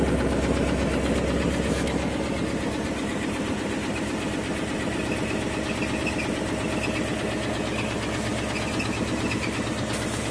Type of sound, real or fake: real